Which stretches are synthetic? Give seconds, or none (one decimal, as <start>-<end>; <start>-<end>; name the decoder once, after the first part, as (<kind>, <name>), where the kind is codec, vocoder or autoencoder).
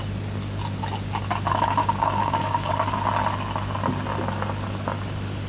1.8-2.7 (codec, DAC)